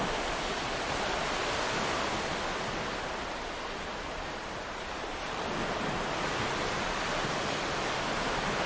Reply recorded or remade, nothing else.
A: recorded